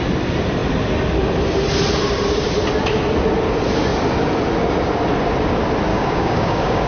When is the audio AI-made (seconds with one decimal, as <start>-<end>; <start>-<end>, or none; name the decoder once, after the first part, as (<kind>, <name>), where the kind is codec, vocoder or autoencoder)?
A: 5.9-6.9 (codec, DAC)